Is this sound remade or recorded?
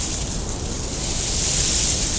recorded